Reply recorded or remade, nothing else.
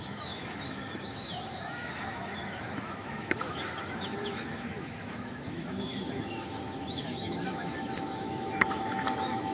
remade